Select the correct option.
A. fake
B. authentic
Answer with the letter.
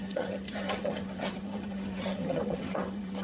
A